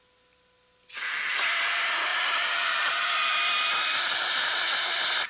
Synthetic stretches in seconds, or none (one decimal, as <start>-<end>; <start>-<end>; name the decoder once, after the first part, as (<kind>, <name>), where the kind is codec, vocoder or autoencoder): 2.1-4.4 (vocoder, BigVGAN v2)